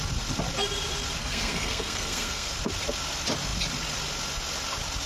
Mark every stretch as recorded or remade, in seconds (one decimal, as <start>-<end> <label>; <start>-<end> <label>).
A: 0.0-1.2 recorded; 1.2-2.5 remade; 2.5-5.1 recorded